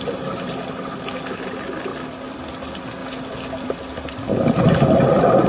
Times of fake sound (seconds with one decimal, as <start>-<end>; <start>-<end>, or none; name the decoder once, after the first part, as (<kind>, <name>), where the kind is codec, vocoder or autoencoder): 0.0-3.0 (vocoder, BigVGAN v2); 3.7-5.5

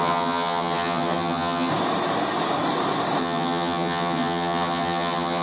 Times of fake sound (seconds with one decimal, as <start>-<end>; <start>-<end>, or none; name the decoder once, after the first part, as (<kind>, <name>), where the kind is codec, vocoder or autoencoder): 0.0-1.7 (vocoder, HiFi-GAN); 3.2-5.4

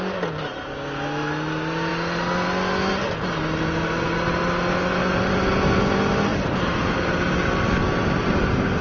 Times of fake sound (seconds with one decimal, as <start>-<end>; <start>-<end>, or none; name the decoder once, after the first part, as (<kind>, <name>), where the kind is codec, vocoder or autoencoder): none

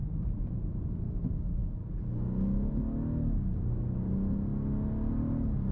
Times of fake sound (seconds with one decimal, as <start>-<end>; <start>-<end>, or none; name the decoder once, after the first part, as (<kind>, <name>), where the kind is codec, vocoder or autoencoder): 0.0-1.1 (vocoder, BigVGAN v2)

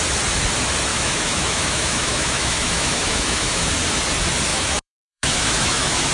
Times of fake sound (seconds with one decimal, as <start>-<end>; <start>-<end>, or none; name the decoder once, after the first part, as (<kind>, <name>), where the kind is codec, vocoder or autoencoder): 0.9-3.7 (autoencoder, DAC-VAE); 4.5-6.1

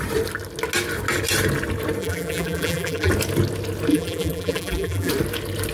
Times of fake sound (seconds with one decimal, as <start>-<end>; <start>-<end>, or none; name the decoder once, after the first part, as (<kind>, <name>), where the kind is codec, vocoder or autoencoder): 2.0-3.1 (vocoder, BigVGAN v2); 3.9-5.1